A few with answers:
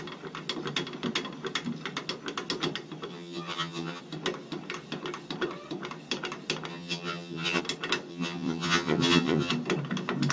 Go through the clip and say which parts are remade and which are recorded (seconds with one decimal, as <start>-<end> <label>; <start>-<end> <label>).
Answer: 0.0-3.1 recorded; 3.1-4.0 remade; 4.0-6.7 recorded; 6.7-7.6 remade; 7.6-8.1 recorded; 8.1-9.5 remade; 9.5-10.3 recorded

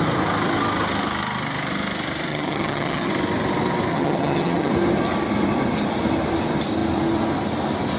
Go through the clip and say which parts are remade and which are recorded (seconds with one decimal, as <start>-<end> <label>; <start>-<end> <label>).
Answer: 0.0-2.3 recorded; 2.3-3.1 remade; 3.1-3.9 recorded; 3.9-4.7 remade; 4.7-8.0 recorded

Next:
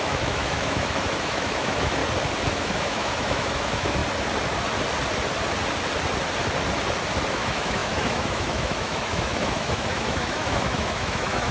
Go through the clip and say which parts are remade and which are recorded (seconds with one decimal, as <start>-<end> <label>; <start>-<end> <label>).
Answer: 0.0-2.0 remade; 2.0-2.6 recorded; 2.6-4.0 remade; 4.0-7.3 recorded; 7.3-11.5 remade

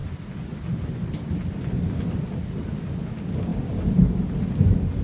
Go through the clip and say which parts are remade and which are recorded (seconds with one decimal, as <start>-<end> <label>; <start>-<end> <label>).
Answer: 0.0-5.0 recorded

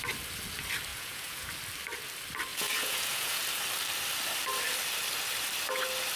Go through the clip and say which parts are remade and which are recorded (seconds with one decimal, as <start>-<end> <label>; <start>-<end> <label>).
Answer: 0.0-0.9 recorded; 0.9-1.5 remade; 1.5-2.5 recorded; 2.5-3.4 remade; 3.4-6.2 recorded